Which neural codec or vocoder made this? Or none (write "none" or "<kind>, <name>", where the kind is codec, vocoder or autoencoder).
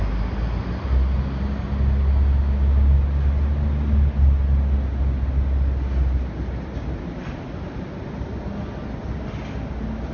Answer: none